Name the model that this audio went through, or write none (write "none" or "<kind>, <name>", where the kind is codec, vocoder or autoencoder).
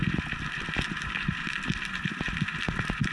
none